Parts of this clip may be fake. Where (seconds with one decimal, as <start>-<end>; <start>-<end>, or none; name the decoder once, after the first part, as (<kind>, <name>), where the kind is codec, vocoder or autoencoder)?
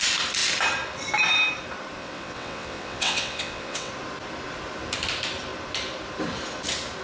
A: 2.0-3.9 (vocoder, WaveNeXt)